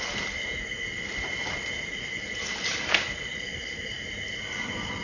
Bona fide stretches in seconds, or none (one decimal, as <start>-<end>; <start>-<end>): 0.0-0.9; 3.9-5.0